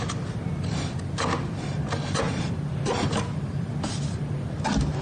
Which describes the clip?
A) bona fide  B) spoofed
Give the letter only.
A